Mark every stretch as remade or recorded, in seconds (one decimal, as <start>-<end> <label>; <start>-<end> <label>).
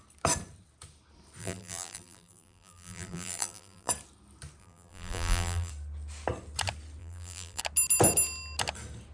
0.0-1.4 recorded; 1.4-3.9 remade; 3.9-4.6 recorded; 4.6-5.7 remade; 5.7-7.0 recorded; 7.0-7.6 remade; 7.6-9.1 recorded